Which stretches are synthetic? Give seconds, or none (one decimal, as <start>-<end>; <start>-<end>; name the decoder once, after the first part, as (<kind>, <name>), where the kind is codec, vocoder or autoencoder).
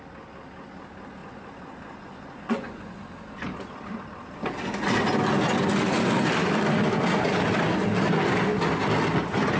1.2-3.0 (vocoder, Vocos)